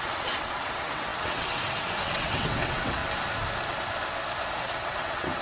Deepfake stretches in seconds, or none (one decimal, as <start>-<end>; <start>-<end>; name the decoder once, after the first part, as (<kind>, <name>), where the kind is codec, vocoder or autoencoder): 0.0-3.0 (vocoder, WaveNeXt); 4.5-5.4